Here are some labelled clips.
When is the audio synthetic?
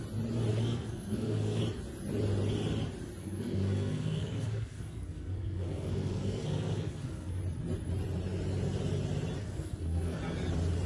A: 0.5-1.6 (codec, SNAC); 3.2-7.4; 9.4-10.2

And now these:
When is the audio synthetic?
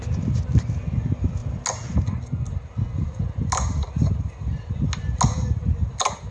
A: none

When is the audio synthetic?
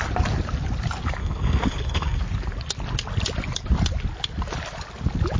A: 1.2-2.2 (codec, SNAC)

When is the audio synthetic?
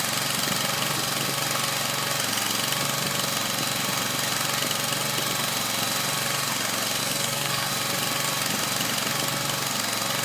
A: 7.0-7.7 (codec, SNAC)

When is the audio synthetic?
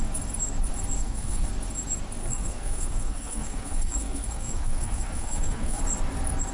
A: 1.0-1.5 (codec, SNAC); 2.2-5.8